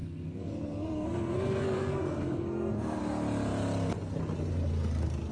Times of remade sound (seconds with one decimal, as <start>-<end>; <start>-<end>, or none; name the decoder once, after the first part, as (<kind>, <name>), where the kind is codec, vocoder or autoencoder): 0.0-3.0 (codec, SNAC)